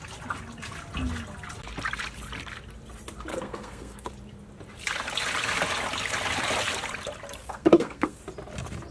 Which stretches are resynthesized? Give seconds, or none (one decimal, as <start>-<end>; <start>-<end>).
3.3-4.1; 7.4-8.2